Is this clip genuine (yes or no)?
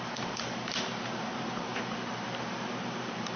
no